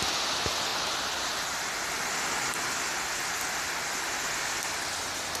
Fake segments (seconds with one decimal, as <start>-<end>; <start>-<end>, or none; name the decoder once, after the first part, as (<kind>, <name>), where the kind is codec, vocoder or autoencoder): none